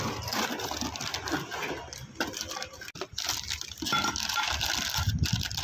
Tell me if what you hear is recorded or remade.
recorded